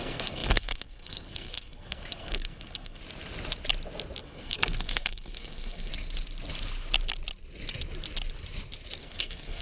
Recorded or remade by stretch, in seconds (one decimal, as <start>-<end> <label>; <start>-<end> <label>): 0.0-3.0 remade; 3.0-4.2 recorded; 4.2-5.9 remade; 5.9-9.0 recorded; 9.0-9.6 remade